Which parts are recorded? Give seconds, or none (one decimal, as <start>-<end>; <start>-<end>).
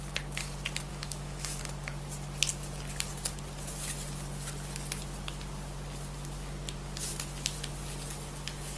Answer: 0.0-0.9; 1.6-8.8